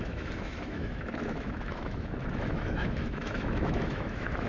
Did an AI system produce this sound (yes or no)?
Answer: yes